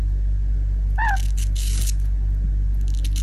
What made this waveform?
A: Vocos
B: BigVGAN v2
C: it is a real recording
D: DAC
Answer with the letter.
C